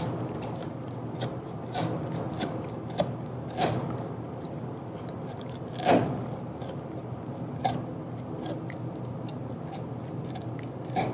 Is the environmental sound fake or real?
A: real